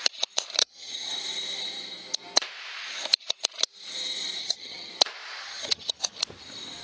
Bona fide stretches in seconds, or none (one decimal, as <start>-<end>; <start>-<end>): 0.0-0.6; 1.1-4.4; 4.9-5.4; 6.2-6.8